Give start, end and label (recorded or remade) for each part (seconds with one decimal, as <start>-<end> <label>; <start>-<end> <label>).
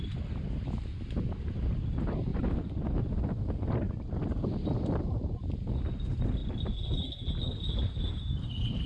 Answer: 0.0-8.9 recorded